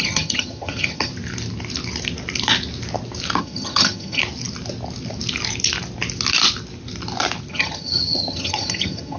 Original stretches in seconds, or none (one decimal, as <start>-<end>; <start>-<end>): 1.1-3.4; 4.2-7.5